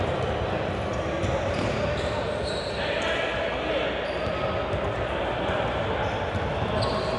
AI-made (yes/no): no